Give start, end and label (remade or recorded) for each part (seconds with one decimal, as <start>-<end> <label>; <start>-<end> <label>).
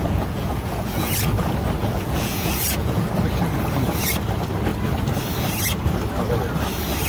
0.0-1.1 remade; 1.1-1.8 recorded; 1.8-3.1 remade; 3.1-7.1 recorded